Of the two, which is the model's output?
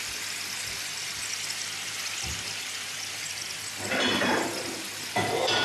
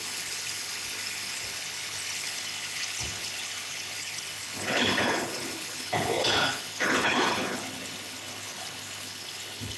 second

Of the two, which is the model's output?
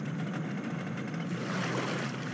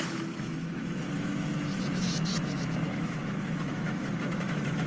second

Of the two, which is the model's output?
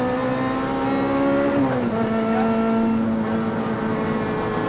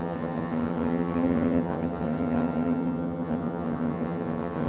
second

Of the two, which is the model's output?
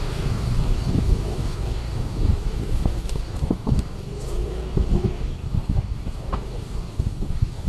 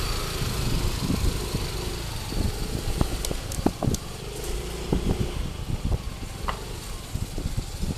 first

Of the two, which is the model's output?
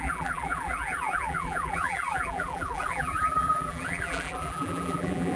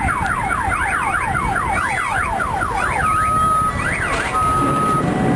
first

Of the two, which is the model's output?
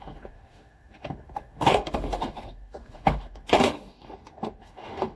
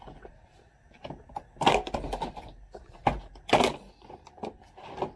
first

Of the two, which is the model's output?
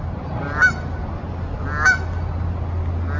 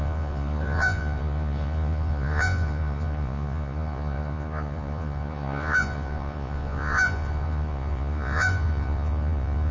second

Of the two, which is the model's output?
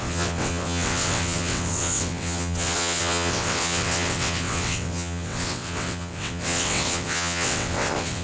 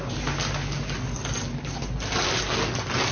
first